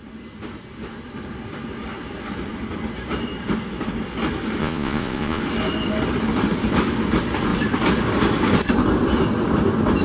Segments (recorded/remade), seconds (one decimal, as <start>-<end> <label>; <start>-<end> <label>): 0.0-4.6 recorded; 4.6-5.4 remade; 5.4-10.0 recorded